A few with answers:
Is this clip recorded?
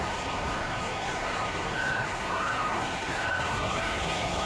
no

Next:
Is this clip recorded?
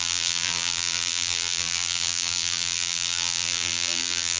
no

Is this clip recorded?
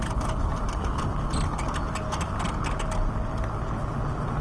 yes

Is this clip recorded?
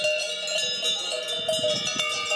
yes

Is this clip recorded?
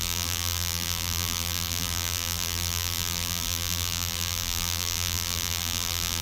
no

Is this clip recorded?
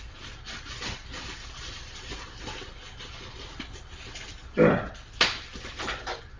yes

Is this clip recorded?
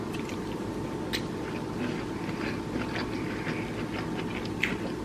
yes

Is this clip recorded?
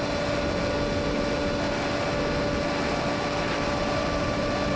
yes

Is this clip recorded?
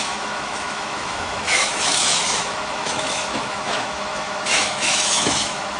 no